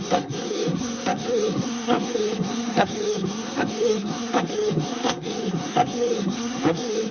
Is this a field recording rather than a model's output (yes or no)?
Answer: no